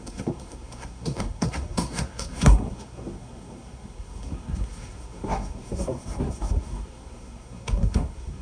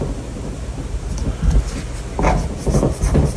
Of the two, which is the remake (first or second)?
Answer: first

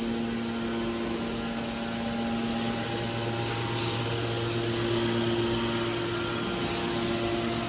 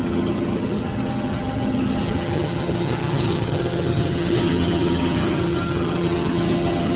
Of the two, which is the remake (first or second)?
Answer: second